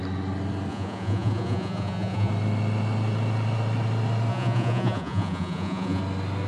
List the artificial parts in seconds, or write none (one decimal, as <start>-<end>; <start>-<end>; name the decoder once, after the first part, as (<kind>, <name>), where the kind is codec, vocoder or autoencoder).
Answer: 0.7-2.3 (vocoder, Vocos); 4.3-6.0